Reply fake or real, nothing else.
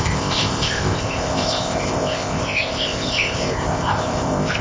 fake